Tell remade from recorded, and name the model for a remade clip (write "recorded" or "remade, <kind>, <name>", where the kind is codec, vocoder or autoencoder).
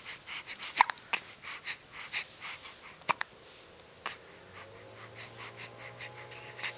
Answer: recorded